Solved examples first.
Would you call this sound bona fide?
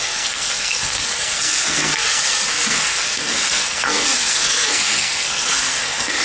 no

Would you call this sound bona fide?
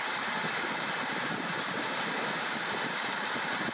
yes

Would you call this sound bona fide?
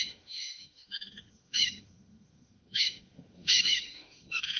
no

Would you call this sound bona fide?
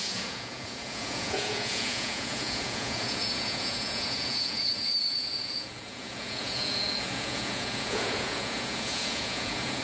no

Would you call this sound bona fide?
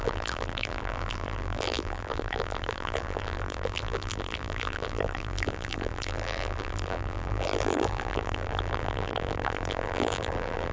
no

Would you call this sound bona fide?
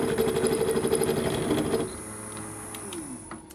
yes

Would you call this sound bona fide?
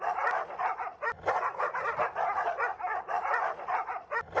yes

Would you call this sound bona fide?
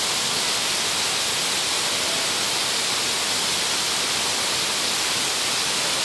yes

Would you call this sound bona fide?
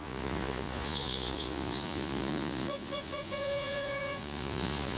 no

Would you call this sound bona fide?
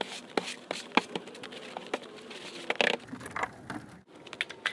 yes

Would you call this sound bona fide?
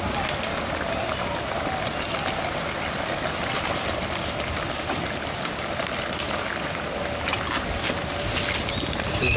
yes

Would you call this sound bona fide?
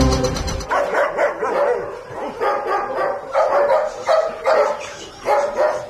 yes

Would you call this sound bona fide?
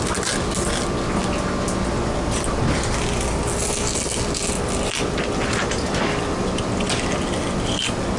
yes